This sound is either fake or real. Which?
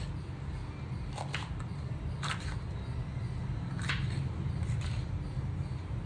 real